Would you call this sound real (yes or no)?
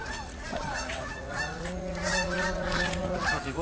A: no